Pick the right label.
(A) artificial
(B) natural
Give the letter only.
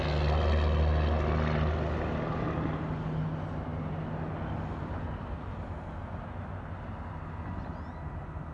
B